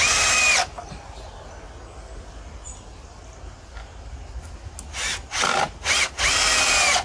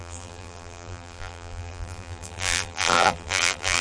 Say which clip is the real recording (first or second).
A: first